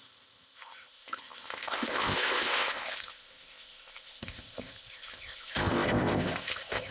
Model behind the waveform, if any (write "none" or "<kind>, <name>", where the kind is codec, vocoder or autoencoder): codec, ZipCodec